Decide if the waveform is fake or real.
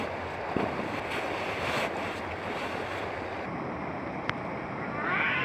real